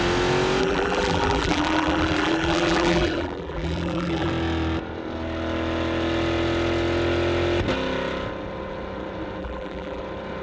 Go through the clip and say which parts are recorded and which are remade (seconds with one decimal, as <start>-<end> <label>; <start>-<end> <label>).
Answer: 0.0-0.6 recorded; 0.6-4.3 remade; 4.3-9.4 recorded; 9.4-10.0 remade; 10.0-10.4 recorded